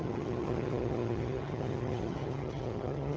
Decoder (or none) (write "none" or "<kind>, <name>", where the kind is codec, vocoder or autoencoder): vocoder, HiFi-GAN